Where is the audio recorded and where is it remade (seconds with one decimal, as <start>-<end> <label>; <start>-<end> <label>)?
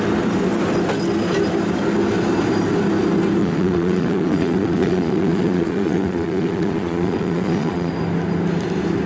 0.0-3.4 recorded; 3.4-7.9 remade; 7.9-9.1 recorded